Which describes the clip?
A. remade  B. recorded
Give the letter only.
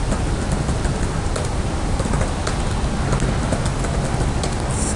B